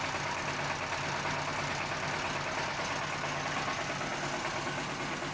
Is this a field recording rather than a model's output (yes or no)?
yes